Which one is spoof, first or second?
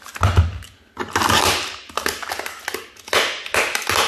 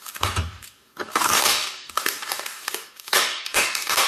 second